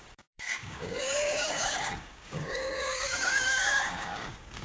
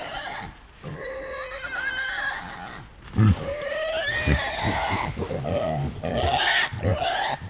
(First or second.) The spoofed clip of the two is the first